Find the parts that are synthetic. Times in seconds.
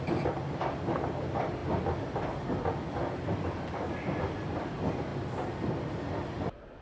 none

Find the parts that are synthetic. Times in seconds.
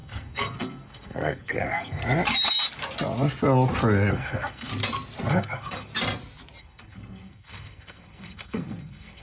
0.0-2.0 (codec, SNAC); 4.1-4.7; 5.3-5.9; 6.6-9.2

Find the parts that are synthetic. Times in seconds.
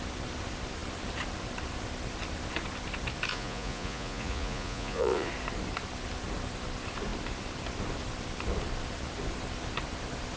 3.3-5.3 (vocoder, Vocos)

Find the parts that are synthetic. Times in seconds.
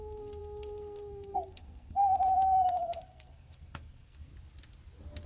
0.0-4.3 (codec, SNAC)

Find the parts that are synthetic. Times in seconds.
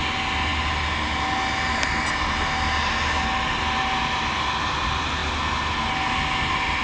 none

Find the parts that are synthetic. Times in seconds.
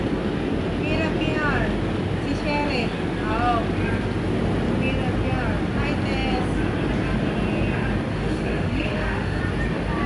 8.1-9.4 (autoencoder, DAC-VAE)